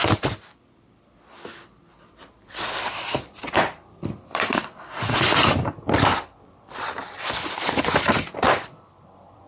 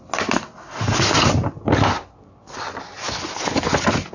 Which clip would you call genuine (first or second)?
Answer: second